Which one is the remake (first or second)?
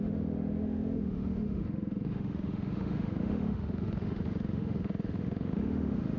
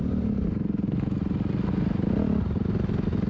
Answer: first